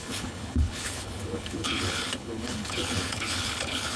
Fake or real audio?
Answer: fake